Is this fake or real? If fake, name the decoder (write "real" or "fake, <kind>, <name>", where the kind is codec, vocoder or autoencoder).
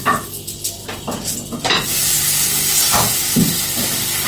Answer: real